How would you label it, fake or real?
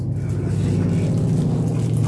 real